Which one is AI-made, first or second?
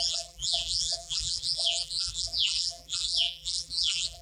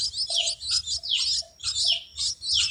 first